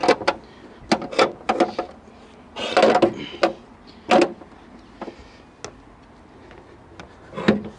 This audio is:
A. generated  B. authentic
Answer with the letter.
B